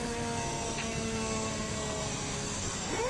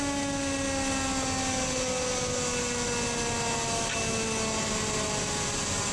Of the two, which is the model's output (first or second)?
first